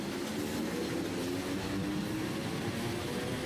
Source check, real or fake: real